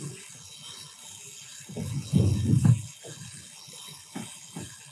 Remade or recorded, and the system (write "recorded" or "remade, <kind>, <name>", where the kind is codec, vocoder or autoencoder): recorded